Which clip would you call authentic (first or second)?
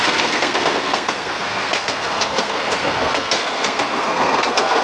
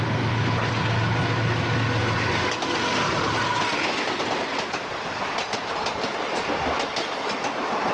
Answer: second